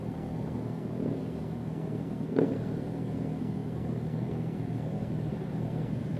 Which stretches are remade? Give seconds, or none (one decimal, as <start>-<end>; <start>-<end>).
0.0-6.2